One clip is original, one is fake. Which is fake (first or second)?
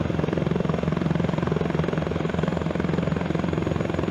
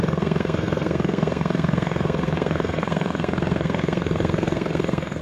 second